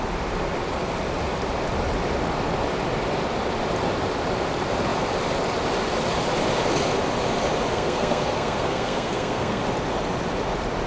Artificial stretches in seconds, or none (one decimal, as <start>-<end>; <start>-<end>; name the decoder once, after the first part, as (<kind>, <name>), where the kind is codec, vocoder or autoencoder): 7.7-9.6 (codec, SNAC)